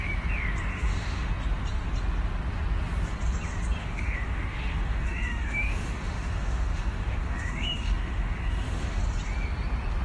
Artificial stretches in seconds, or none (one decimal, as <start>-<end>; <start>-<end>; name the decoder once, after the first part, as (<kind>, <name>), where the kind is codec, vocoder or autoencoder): 0.7-1.3 (autoencoder, DAC-VAE); 3.8-9.0